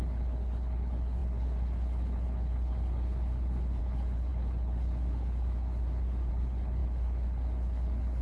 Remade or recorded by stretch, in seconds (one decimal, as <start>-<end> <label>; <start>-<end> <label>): 0.0-8.2 remade